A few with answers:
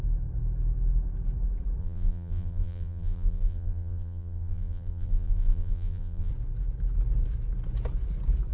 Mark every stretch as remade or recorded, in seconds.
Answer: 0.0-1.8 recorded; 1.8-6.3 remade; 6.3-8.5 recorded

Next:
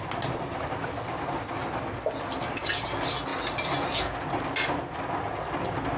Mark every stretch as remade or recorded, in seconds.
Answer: 0.0-6.0 recorded